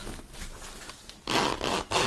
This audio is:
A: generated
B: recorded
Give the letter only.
B